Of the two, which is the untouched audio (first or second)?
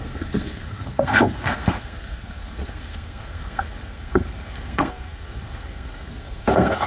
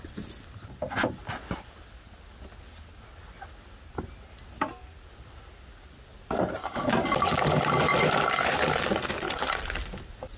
second